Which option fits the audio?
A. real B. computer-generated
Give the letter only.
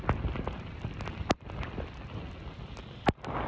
A